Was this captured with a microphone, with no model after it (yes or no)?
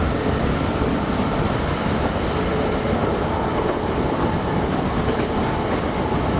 yes